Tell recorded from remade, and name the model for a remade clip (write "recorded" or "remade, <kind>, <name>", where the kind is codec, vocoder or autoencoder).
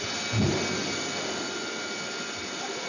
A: recorded